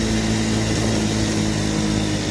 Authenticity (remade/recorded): recorded